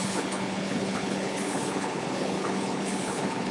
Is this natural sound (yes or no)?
no